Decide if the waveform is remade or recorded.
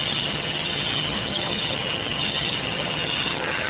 remade